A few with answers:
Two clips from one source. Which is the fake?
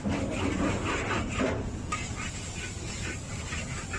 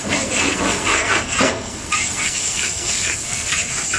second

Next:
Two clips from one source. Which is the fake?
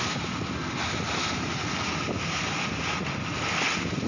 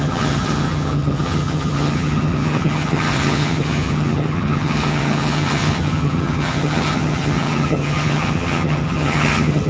second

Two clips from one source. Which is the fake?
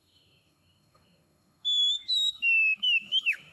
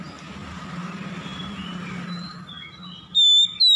first